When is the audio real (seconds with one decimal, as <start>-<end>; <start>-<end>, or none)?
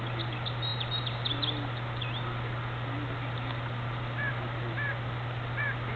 0.0-6.0